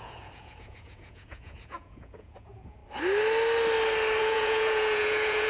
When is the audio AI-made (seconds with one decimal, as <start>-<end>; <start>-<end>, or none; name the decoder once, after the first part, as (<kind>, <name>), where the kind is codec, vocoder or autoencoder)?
0.0-2.8 (vocoder, Vocos); 4.2-5.5